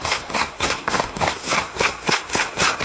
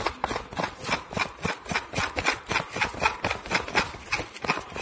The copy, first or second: first